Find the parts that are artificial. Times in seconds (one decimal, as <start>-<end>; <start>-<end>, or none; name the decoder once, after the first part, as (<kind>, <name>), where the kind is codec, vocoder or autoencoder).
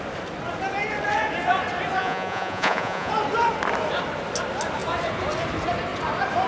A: 2.0-3.1 (vocoder, Vocos)